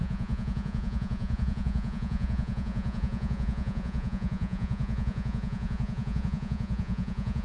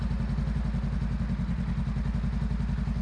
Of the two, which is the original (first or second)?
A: second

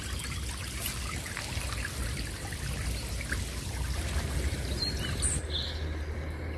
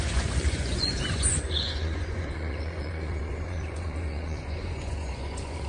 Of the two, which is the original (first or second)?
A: first